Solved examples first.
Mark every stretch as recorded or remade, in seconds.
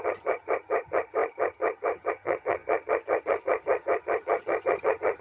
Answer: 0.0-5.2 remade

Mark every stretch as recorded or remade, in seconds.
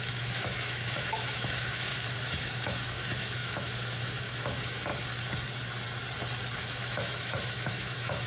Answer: 0.0-4.9 remade; 4.9-6.6 recorded; 6.6-8.3 remade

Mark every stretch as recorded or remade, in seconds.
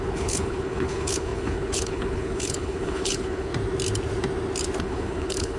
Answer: 0.0-3.5 remade; 3.5-4.8 recorded; 4.8-5.6 remade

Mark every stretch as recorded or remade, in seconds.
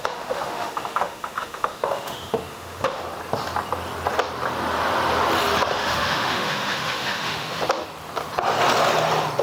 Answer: 0.0-3.0 remade; 3.0-5.7 recorded; 5.7-7.6 remade; 7.6-9.4 recorded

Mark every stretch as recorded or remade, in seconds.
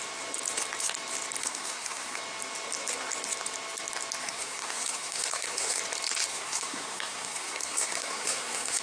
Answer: 0.0-1.4 recorded; 1.4-2.2 remade; 2.2-4.2 recorded; 4.2-5.8 remade; 5.8-6.3 recorded; 6.3-8.8 remade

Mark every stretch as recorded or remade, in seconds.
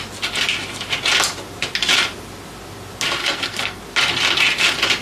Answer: 0.0-3.2 recorded; 3.2-3.8 remade; 3.8-5.0 recorded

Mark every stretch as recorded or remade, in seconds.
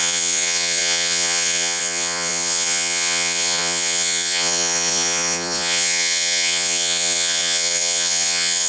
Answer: 0.0-8.7 remade